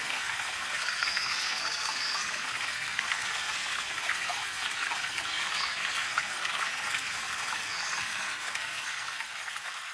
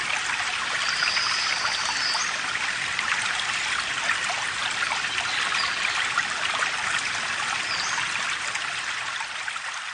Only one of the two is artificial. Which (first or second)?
first